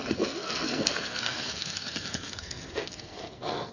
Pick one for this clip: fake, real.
fake